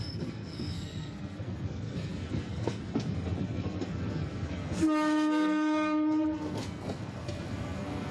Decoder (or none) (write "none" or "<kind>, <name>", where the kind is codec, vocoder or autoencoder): codec, SNAC